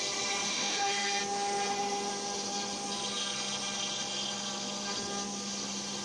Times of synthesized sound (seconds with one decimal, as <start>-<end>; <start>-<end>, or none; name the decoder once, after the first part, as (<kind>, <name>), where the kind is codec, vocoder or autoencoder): 0.5-1.2 (autoencoder, DAC-VAE)